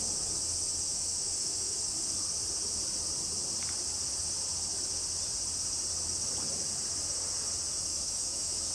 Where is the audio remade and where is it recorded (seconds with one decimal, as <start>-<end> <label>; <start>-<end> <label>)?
0.0-0.9 recorded; 0.9-1.8 remade; 1.8-7.9 recorded; 7.9-8.7 remade